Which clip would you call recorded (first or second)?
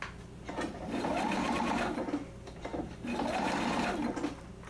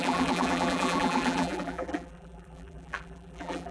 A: first